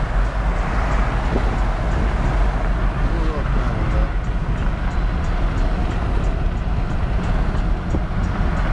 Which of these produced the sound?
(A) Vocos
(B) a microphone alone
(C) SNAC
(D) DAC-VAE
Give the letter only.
B